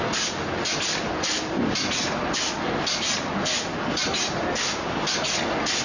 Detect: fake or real real